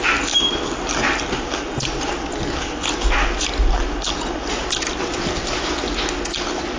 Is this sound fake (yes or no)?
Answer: no